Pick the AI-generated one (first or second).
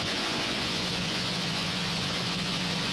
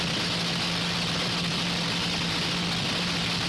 first